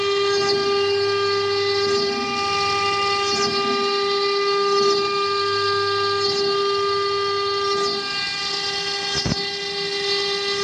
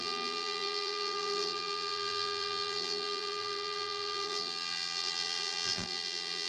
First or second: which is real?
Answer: first